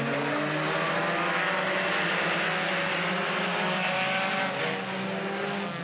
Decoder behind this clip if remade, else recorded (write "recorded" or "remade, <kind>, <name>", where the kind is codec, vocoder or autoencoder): recorded